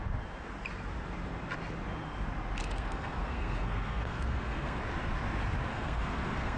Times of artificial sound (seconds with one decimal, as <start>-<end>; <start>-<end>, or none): 2.6-4.8; 5.7-6.6